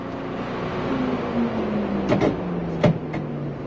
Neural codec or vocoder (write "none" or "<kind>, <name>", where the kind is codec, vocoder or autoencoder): none